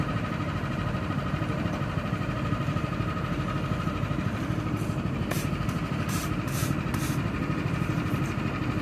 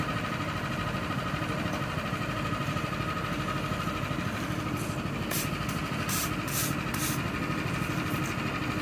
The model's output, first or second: first